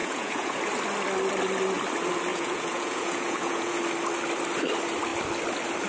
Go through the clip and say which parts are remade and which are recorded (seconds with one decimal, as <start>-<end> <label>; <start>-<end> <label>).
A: 0.0-0.6 remade; 0.6-2.3 recorded; 2.3-3.8 remade; 3.8-5.9 recorded